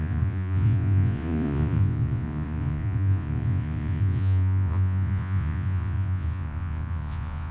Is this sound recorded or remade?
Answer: remade